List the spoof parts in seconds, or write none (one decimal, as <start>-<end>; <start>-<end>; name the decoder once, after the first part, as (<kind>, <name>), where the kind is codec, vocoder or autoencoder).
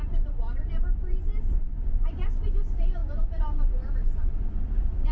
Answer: 0.0-1.5 (vocoder, BigVGAN v2); 3.0-4.4